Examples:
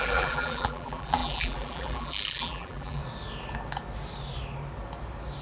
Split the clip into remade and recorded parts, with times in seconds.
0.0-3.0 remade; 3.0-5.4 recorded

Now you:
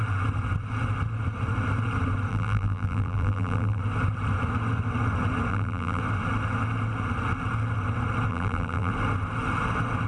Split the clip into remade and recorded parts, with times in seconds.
0.0-2.3 recorded; 2.3-3.8 remade; 3.8-5.5 recorded; 5.5-6.0 remade; 6.0-8.3 recorded; 8.3-8.9 remade; 8.9-10.1 recorded

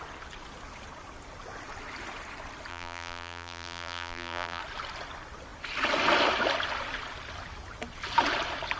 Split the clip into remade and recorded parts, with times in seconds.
0.0-2.7 recorded; 2.7-4.6 remade; 4.6-8.8 recorded

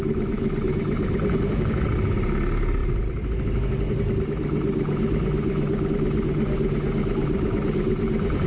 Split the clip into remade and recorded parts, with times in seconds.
0.0-8.5 recorded

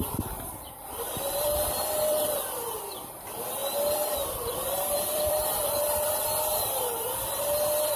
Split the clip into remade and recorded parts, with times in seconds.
0.0-8.0 remade

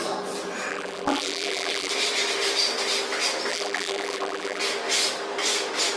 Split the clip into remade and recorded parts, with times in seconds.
0.0-0.7 recorded; 0.7-1.9 remade; 1.9-3.5 recorded; 3.5-4.6 remade; 4.6-6.0 recorded

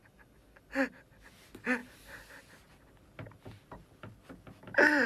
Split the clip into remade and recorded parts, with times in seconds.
0.0-5.1 recorded